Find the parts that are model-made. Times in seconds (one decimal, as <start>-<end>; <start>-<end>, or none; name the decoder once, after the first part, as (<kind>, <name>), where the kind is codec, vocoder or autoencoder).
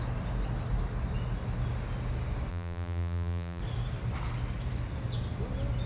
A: 2.5-3.6 (vocoder, BigVGAN v2)